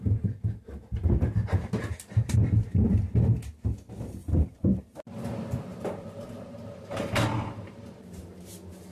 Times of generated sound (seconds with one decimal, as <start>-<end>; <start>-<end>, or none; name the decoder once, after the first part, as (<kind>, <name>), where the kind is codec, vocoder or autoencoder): 4.2-5.0 (vocoder, BigVGAN v2); 5.7-8.4